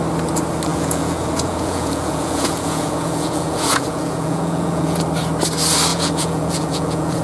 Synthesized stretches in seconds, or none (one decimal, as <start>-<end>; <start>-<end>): 0.7-5.0; 5.9-7.2